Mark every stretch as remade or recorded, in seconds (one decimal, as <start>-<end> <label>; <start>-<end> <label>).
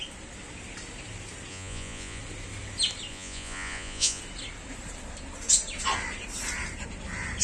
0.0-1.5 recorded; 1.5-2.2 remade; 2.2-3.1 recorded; 3.1-4.2 remade; 4.2-7.4 recorded